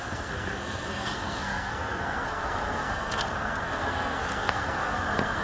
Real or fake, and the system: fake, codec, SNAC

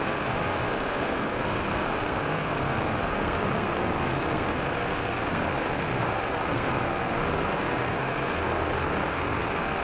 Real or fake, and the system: fake, codec, SNAC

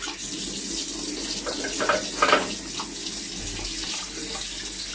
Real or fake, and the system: real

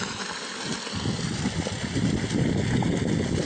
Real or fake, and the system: real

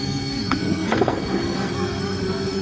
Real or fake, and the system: fake, codec, SNAC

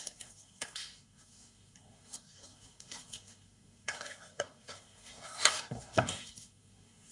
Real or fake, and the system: fake, codec, SNAC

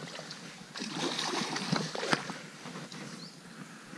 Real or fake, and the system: real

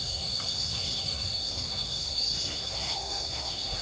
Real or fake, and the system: fake, codec, SNAC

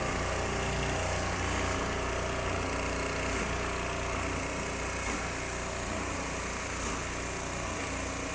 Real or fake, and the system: real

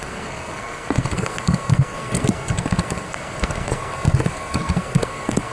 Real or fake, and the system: fake, codec, SNAC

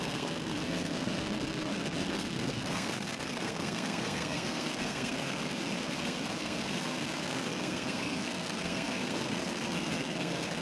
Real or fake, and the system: fake, codec, SNAC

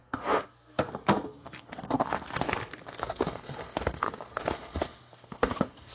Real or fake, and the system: fake, codec, SNAC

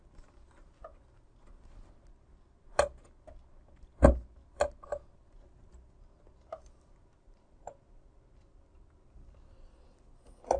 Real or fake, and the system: real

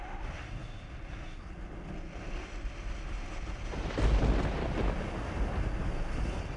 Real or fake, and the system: real